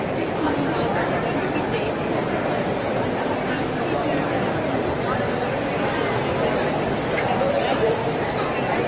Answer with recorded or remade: recorded